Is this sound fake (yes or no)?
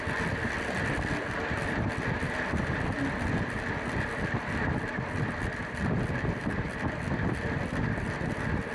no